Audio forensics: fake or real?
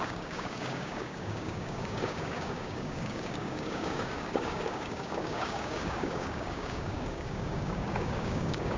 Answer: fake